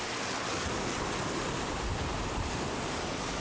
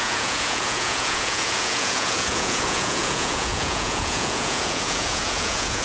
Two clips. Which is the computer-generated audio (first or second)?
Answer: second